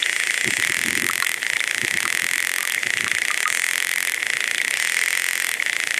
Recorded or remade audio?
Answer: recorded